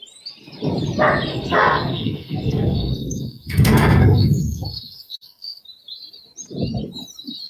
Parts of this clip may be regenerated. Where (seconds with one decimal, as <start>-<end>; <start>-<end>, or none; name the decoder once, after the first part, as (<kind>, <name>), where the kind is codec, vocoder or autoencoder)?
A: 1.3-5.6 (codec, SNAC)